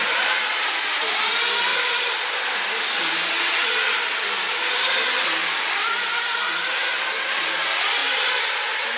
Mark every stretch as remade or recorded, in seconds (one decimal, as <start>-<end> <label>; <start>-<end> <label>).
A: 0.0-9.0 recorded